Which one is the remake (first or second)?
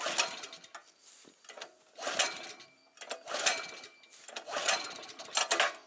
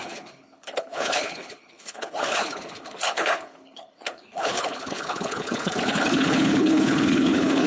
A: second